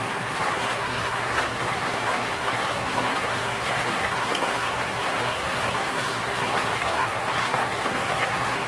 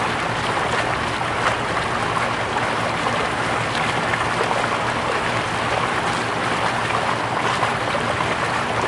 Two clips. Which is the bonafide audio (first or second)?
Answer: second